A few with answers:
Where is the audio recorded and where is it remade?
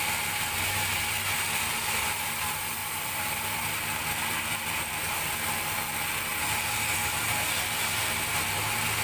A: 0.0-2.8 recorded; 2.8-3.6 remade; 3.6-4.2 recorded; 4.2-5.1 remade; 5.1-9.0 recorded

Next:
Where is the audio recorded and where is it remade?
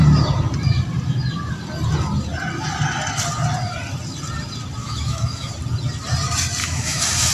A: 0.0-4.8 recorded; 4.8-5.5 remade; 5.5-6.6 recorded; 6.6-7.3 remade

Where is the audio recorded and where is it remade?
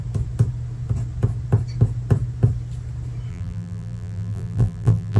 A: 0.0-3.3 recorded; 3.3-5.2 remade